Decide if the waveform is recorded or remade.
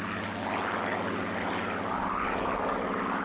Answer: recorded